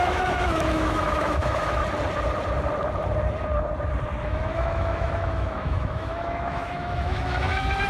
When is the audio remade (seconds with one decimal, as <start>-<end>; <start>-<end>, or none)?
0.0-1.8; 4.2-7.9